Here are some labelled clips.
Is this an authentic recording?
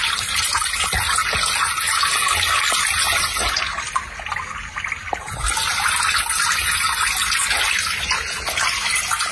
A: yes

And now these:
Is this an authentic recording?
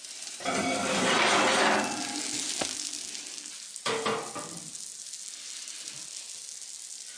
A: yes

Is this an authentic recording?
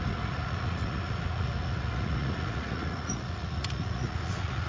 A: no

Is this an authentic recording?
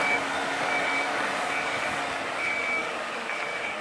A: no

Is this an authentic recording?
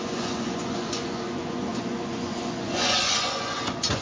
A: no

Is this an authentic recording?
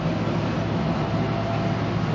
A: yes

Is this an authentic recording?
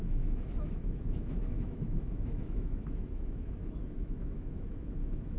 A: no